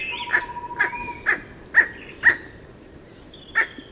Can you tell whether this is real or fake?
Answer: real